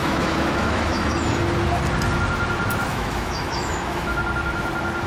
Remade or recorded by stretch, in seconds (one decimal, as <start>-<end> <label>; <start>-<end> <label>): 0.0-1.1 remade; 1.1-2.9 recorded; 2.9-4.2 remade; 4.2-5.1 recorded